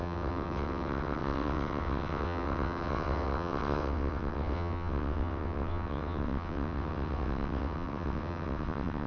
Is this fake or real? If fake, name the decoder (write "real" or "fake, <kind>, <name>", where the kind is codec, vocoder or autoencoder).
fake, vocoder, WaveNeXt